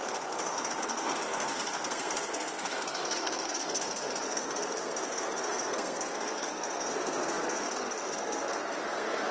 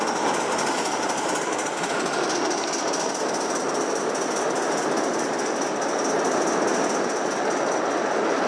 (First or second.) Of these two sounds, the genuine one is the second